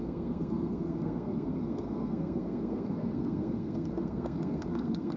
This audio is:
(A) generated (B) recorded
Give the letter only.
A